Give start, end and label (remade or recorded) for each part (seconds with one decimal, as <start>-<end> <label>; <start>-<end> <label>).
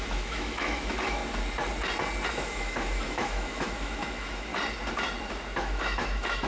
0.0-1.2 remade; 1.2-2.3 recorded; 2.3-4.5 remade; 4.5-5.6 recorded; 5.6-6.5 remade